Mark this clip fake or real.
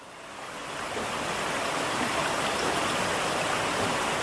real